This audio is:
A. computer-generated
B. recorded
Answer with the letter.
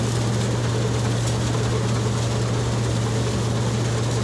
B